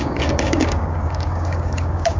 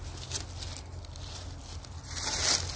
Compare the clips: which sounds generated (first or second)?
first